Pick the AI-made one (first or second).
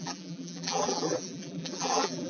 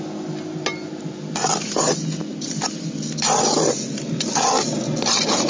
first